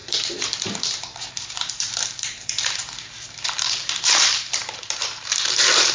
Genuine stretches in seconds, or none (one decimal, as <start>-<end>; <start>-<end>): none